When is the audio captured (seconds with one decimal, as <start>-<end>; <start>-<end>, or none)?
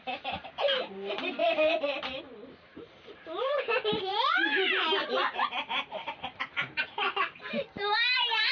none